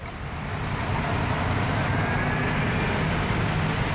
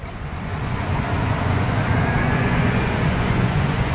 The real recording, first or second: first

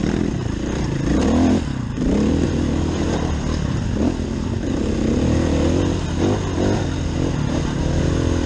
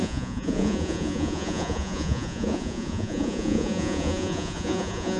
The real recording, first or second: first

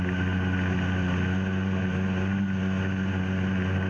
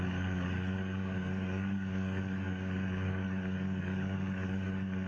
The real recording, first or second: first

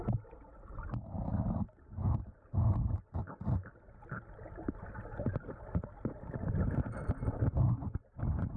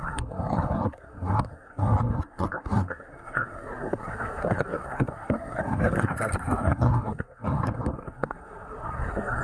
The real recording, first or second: first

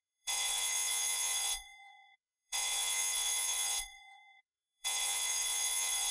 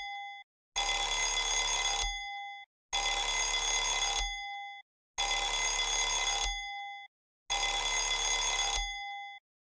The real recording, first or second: second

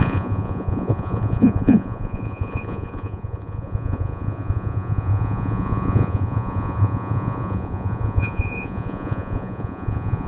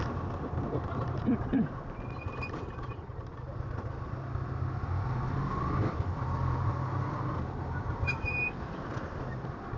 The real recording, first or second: second